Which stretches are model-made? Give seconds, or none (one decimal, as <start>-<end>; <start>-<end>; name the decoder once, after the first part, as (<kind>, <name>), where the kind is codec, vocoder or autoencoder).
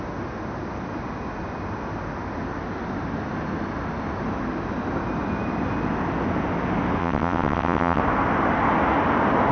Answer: 7.0-8.0 (vocoder, WaveNeXt)